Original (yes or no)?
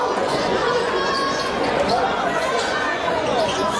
no